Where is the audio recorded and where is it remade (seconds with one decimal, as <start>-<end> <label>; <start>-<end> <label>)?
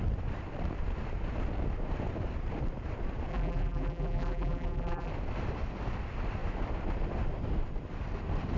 0.0-3.3 recorded; 3.3-5.1 remade; 5.1-8.6 recorded